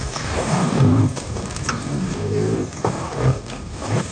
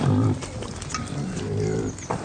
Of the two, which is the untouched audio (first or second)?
second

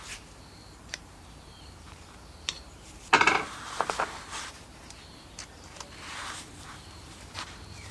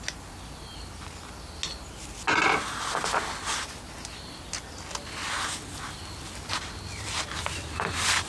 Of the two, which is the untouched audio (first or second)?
second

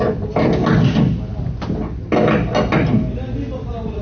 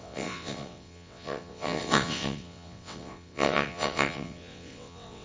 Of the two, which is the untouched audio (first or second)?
first